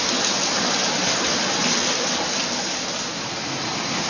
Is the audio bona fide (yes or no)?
yes